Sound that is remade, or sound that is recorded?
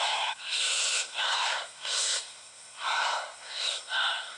remade